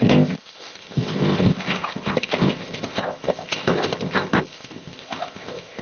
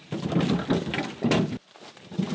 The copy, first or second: first